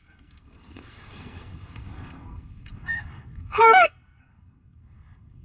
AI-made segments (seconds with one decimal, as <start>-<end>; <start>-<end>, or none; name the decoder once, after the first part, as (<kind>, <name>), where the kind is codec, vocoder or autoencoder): 0.0-5.4 (codec, SNAC)